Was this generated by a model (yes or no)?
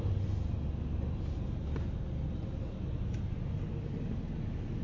no